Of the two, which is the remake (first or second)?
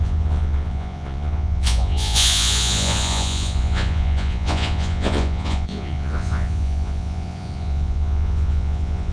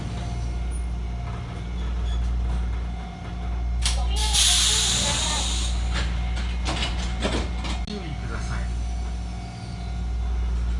first